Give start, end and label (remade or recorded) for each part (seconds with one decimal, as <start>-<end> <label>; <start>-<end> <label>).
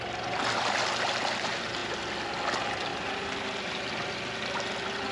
0.0-5.1 recorded